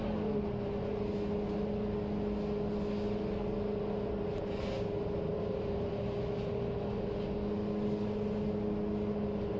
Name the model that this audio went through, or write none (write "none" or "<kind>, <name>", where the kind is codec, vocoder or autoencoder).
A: none